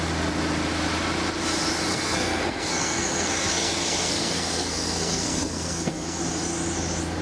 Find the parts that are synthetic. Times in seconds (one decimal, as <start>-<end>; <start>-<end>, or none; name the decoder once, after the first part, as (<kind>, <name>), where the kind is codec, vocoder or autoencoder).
1.9-6.2 (codec, SNAC)